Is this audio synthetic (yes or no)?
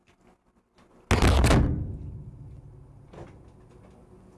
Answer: no